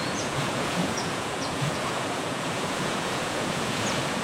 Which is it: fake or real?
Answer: fake